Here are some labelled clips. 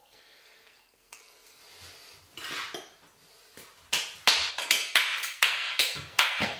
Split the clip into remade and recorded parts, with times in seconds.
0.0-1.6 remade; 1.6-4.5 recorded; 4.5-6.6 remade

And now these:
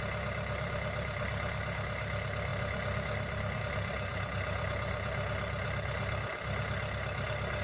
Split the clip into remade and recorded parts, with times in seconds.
0.0-7.6 recorded

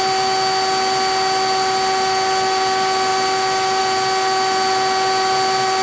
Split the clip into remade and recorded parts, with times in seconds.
0.0-5.8 recorded

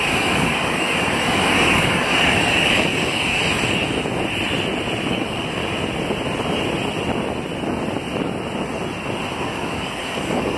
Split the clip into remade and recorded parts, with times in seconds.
0.0-3.4 remade; 3.4-5.1 recorded; 5.1-5.6 remade; 5.6-9.3 recorded; 9.3-10.6 remade